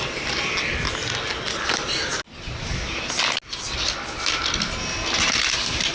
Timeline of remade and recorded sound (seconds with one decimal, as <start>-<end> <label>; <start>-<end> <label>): 0.0-5.9 recorded

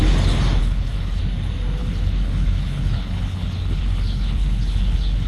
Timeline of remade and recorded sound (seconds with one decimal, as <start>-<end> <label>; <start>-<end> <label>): 0.0-0.6 recorded; 0.6-1.2 remade; 1.2-1.8 recorded; 1.8-5.3 remade

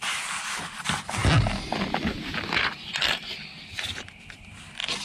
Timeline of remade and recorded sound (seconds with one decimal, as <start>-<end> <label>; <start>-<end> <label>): 0.0-5.0 recorded

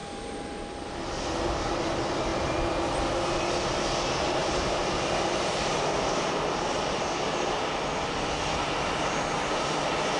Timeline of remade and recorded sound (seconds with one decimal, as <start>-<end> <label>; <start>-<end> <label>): 0.0-1.0 remade; 1.0-2.3 recorded; 2.3-2.8 remade; 2.8-4.4 recorded; 4.4-7.8 remade; 7.8-10.2 recorded

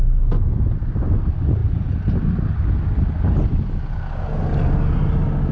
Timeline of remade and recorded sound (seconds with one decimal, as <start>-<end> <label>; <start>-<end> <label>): 0.0-5.5 recorded